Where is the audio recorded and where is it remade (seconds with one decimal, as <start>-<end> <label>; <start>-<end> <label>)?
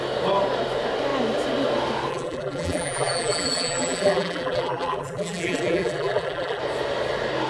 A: 0.0-2.1 recorded; 2.1-6.6 remade; 6.6-7.5 recorded